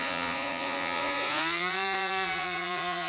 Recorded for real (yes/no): no